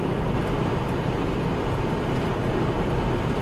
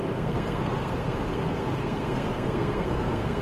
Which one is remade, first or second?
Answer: second